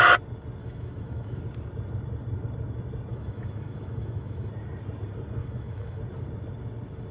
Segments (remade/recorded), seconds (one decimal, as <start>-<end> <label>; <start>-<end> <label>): 0.0-0.6 recorded; 0.6-1.4 remade; 1.4-3.1 recorded; 3.1-4.5 remade; 4.5-5.4 recorded; 5.4-6.0 remade; 6.0-7.1 recorded